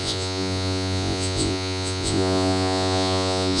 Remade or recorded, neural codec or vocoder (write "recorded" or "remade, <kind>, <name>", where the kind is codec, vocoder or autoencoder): remade, vocoder, Vocos